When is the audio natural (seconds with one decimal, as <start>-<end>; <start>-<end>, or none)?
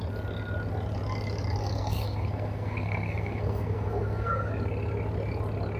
0.0-1.6; 4.5-5.8